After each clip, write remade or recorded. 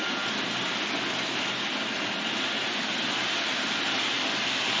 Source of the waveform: recorded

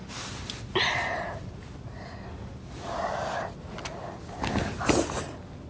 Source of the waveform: recorded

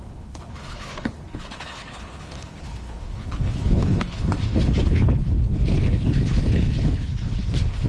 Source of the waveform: remade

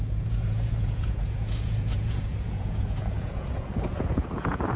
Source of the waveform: remade